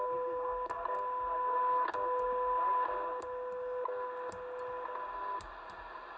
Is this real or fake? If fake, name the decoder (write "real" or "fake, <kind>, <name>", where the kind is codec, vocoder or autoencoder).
real